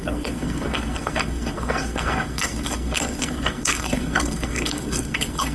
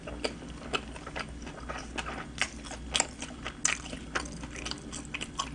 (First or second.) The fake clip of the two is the first